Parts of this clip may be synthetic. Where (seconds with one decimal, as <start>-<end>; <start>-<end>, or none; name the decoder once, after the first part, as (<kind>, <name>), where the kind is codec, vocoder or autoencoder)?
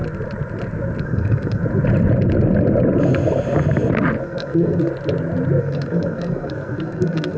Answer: 1.0-1.6 (codec, SNAC); 4.2-4.9; 5.6-7.4